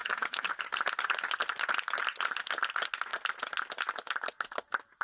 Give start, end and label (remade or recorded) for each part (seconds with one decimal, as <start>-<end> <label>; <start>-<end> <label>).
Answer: 0.0-0.5 remade; 0.5-5.0 recorded